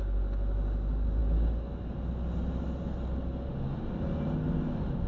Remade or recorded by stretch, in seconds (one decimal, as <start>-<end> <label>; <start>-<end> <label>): 0.0-5.1 recorded

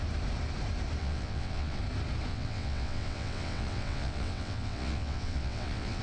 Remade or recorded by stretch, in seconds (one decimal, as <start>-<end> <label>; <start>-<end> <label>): 0.0-1.0 recorded; 1.0-1.8 remade; 1.8-2.3 recorded; 2.3-6.0 remade

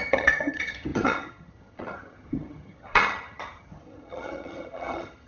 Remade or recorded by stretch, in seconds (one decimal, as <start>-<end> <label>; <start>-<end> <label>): 0.0-5.3 remade

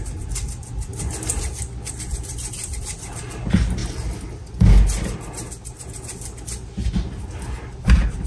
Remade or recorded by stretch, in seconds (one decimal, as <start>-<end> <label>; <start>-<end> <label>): 0.0-0.9 remade; 0.9-1.9 recorded; 1.9-3.8 remade; 3.8-7.8 recorded; 7.8-8.3 remade

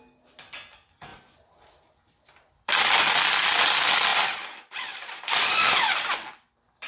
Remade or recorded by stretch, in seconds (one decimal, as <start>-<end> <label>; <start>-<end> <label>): 0.0-1.1 recorded; 1.1-3.4 remade; 3.4-4.1 recorded; 4.1-5.8 remade; 5.8-6.9 recorded

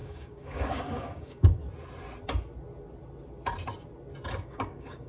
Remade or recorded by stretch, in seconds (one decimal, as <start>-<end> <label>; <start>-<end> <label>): 0.0-1.6 remade; 1.6-4.4 recorded; 4.4-5.1 remade

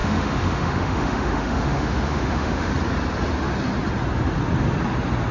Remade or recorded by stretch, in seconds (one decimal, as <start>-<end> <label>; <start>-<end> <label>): 0.0-2.7 remade; 2.7-5.3 recorded